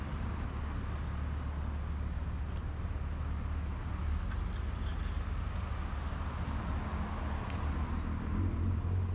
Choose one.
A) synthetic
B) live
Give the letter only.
B